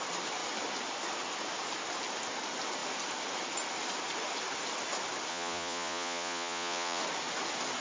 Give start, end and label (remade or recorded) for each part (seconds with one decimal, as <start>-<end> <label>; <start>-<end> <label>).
0.0-5.3 recorded; 5.3-7.0 remade; 7.0-7.8 recorded